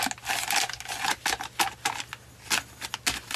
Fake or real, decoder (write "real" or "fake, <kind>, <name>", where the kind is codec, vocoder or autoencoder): real